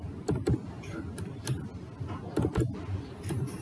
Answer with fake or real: real